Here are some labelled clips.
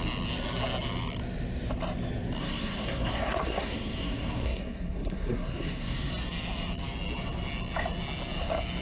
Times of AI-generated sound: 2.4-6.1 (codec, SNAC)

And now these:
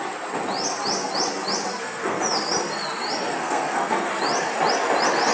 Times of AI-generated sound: 1.7-2.2 (codec, SNAC); 3.4-4.1

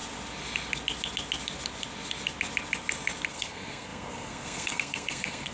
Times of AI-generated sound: 3.3-5.5 (codec, SNAC)

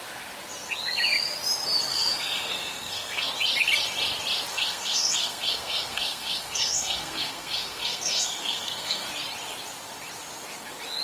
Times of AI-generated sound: 1.9-3.3 (codec, SNAC); 4.5-9.1

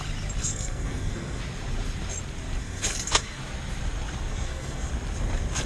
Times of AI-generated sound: 0.4-1.4 (codec, SNAC); 2.6-3.4; 4.3-4.9

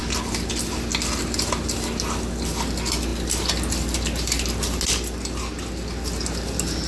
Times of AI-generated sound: none